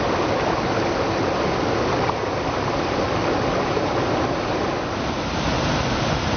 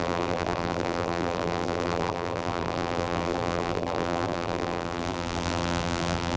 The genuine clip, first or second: first